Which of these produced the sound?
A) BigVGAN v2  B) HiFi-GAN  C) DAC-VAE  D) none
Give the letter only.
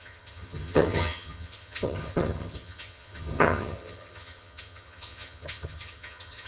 B